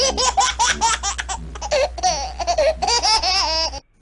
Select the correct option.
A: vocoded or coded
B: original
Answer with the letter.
B